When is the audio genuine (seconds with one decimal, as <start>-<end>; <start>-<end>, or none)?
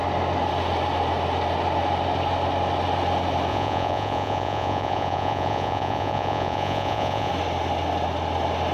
0.0-3.5; 7.3-8.7